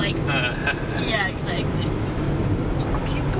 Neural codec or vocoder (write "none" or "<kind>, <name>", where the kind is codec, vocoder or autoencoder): none